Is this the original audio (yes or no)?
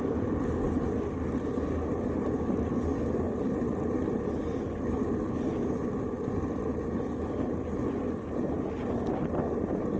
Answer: yes